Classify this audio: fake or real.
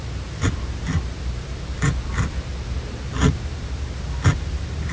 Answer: real